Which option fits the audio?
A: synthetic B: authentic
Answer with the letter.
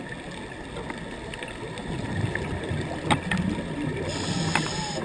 B